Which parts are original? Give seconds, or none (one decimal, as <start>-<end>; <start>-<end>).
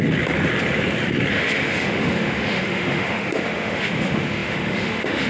0.0-1.3